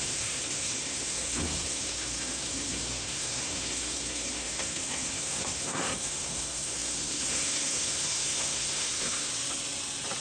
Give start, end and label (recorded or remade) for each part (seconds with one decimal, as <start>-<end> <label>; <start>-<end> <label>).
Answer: 0.0-9.3 remade; 9.3-10.2 recorded